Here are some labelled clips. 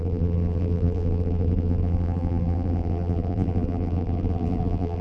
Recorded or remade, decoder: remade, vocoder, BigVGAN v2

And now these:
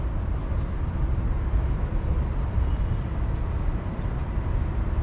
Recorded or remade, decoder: recorded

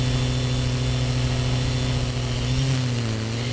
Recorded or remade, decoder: recorded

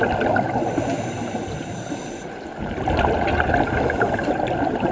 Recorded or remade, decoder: recorded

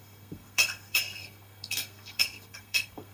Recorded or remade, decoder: remade, codec, SNAC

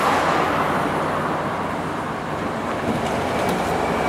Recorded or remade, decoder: recorded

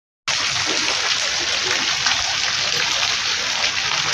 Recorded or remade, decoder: recorded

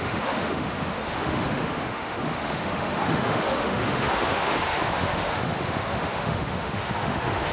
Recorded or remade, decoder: remade, autoencoder, DAC-VAE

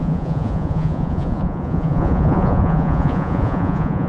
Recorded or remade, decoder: remade, vocoder, Vocos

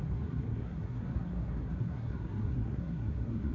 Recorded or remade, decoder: remade, codec, SNAC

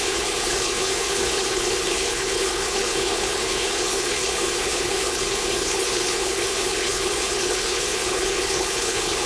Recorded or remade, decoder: remade, codec, HILCodec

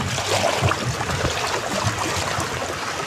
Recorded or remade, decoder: recorded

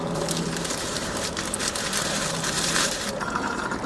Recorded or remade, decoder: remade, vocoder, BigVGAN v2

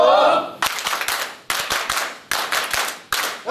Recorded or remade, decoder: recorded